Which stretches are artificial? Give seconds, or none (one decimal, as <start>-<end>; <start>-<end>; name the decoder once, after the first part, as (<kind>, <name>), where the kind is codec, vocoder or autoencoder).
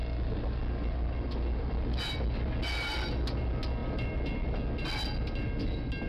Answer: none